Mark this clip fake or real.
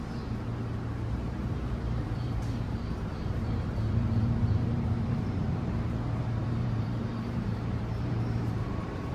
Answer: fake